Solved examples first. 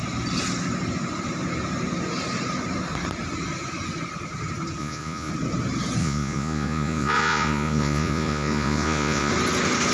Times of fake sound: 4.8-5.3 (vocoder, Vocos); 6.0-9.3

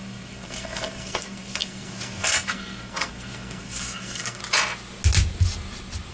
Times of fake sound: 0.0-4.4 (codec, SNAC)